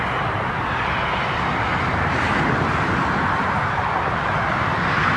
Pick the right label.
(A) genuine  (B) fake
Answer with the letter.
A